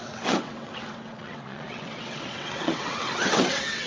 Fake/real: fake